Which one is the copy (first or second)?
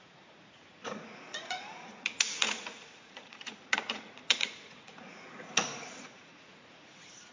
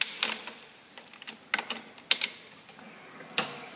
first